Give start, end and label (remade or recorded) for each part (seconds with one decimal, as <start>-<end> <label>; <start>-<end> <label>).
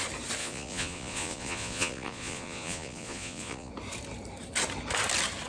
0.0-0.4 recorded; 0.4-3.7 remade; 3.7-5.5 recorded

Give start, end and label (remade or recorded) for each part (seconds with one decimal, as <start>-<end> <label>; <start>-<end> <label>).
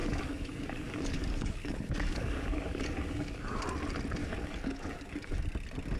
0.0-3.6 remade; 3.6-4.2 recorded; 4.2-5.4 remade; 5.4-6.0 recorded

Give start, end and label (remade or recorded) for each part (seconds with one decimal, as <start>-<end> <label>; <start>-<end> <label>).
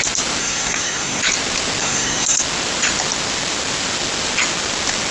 0.0-0.4 recorded; 0.4-1.2 remade; 1.2-1.8 recorded; 1.8-2.4 remade; 2.4-5.1 recorded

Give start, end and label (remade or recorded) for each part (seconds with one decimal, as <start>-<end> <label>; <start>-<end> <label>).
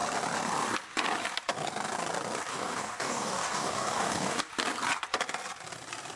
0.0-2.5 recorded; 2.5-4.5 remade; 4.5-6.2 recorded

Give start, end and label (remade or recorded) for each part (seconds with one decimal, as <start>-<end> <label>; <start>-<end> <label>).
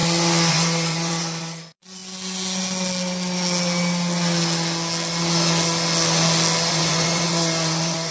0.0-0.5 recorded; 0.5-2.0 remade; 2.0-6.7 recorded; 6.7-8.1 remade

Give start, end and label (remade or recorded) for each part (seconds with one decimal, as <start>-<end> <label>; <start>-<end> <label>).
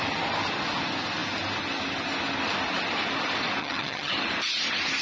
0.0-3.6 recorded; 3.6-4.1 remade; 4.1-5.0 recorded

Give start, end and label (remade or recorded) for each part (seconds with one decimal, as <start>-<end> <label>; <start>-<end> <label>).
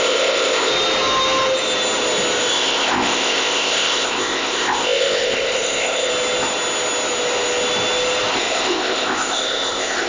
0.0-0.7 remade; 0.7-2.5 recorded; 2.5-6.1 remade; 6.1-8.3 recorded; 8.3-10.1 remade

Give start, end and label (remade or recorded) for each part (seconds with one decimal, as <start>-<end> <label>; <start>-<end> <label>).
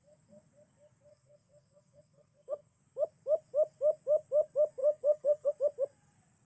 0.0-1.1 recorded; 1.1-2.8 remade; 2.8-4.8 recorded; 4.8-5.5 remade; 5.5-6.4 recorded